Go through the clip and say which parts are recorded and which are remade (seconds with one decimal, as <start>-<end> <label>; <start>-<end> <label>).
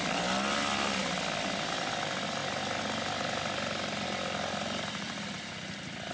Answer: 0.0-6.1 recorded